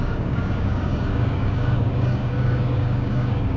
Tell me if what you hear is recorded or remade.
remade